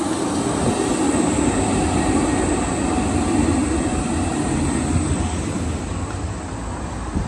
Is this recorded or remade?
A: recorded